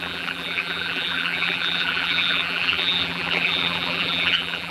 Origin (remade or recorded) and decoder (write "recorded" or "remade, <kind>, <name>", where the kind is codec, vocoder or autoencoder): remade, vocoder, BigVGAN v2